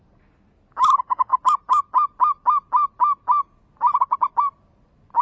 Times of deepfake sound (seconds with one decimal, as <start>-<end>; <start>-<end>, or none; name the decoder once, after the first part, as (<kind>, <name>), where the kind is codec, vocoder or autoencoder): none